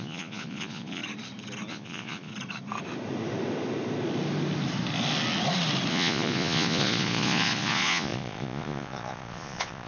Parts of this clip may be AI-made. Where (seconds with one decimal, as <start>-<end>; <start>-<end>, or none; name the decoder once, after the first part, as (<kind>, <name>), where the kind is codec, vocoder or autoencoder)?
0.0-1.0 (vocoder, Vocos); 1.7-2.3; 5.9-9.9